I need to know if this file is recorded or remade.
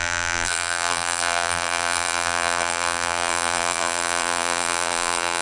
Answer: remade